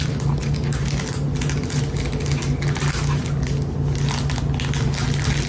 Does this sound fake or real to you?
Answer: real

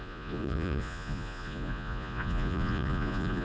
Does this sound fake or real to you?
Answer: fake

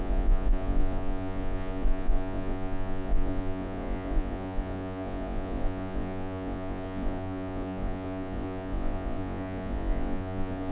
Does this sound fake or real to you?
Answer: fake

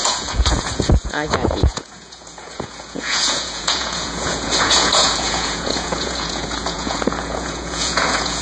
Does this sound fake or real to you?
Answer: fake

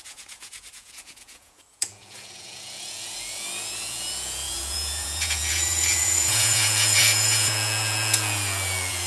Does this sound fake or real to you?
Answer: fake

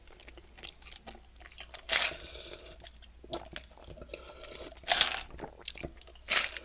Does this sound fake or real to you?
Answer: real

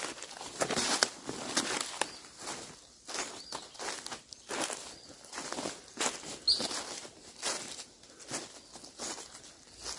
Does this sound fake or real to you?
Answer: real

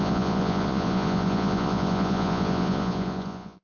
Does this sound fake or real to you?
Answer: fake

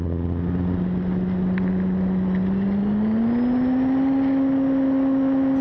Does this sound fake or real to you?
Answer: real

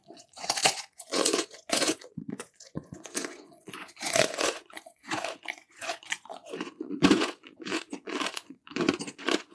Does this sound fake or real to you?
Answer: fake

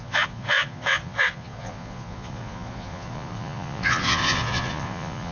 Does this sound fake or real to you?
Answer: fake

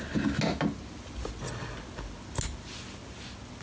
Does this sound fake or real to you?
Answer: real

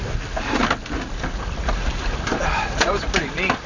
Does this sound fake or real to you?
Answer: real